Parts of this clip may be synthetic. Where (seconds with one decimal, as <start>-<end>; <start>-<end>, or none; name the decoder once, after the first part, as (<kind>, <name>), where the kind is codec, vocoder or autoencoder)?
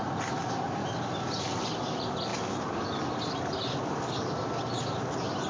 0.8-1.8 (vocoder, BigVGAN v2); 2.3-4.9